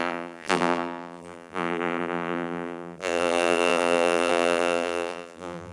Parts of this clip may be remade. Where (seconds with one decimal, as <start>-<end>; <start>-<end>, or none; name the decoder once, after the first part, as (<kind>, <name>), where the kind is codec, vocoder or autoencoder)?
0.0-5.7 (vocoder, BigVGAN v2)